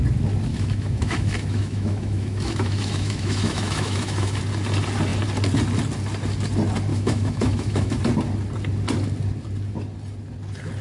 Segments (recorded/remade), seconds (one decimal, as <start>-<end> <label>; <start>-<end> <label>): 0.0-0.5 recorded; 0.5-4.4 remade; 4.4-6.9 recorded; 6.9-8.0 remade; 8.0-10.8 recorded